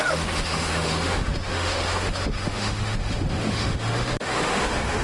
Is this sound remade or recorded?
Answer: remade